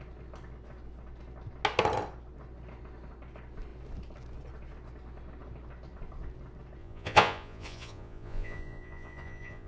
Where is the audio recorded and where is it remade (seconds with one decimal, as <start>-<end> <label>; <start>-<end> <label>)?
0.0-6.8 recorded; 6.8-9.7 remade